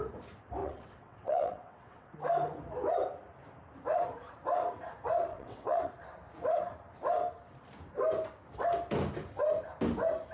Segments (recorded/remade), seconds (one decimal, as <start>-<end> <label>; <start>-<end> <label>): 0.0-0.6 recorded; 0.6-2.1 remade; 2.1-5.3 recorded; 5.3-5.9 remade; 5.9-10.3 recorded